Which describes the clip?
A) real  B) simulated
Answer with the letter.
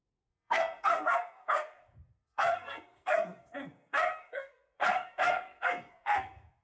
B